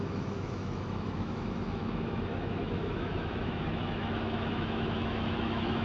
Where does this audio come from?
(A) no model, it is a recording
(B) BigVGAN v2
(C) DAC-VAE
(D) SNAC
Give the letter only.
C